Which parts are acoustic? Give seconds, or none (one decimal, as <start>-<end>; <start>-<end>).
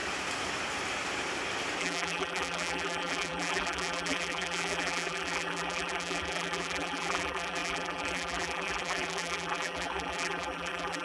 0.0-1.8